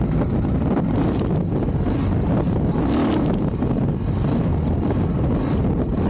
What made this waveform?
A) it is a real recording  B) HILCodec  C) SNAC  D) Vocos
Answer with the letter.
A